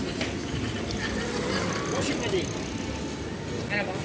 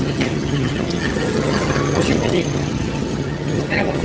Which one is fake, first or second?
second